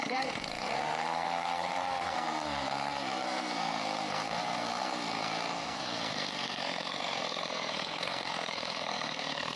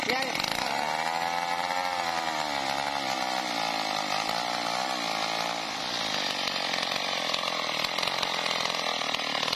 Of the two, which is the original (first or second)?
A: second